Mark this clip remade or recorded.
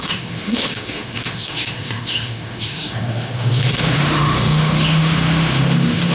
remade